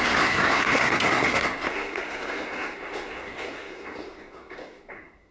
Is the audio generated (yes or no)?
yes